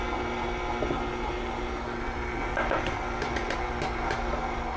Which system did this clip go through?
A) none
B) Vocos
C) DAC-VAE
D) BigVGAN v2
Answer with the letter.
A